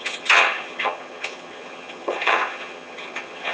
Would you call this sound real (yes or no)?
no